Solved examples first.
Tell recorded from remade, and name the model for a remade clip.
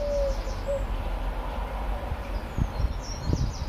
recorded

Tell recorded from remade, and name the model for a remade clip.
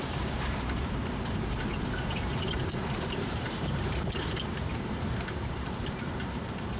remade, vocoder, BigVGAN v2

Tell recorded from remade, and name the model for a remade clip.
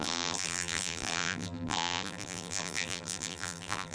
remade, vocoder, BigVGAN v2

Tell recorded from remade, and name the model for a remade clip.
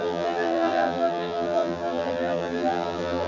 remade, vocoder, BigVGAN v2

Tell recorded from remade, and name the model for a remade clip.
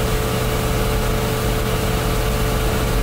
recorded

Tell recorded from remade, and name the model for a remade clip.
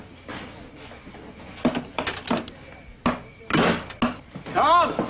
recorded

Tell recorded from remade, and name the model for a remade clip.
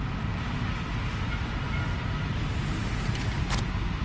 recorded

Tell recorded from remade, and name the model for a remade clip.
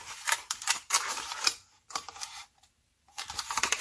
remade, vocoder, BigVGAN v2